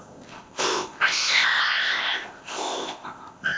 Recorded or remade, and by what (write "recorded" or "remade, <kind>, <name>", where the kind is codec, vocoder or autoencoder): remade, codec, ZipCodec